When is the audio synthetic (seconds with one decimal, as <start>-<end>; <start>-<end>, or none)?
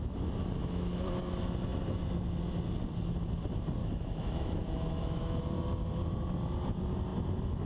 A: 0.6-1.2; 3.8-5.4